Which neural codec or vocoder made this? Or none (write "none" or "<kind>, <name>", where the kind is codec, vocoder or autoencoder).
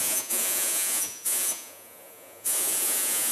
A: vocoder, Vocos